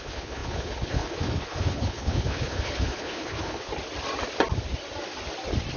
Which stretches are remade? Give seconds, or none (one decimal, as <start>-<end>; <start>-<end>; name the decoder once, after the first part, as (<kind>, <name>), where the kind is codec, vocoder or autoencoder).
0.0-3.7 (codec, HILCodec)